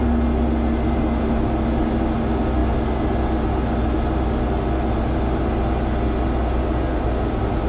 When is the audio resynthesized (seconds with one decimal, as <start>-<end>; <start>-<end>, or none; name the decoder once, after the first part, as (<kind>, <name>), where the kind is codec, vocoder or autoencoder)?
none